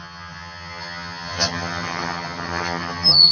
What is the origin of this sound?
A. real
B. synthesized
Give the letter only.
B